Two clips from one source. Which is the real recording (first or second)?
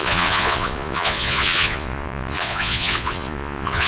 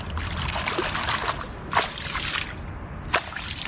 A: second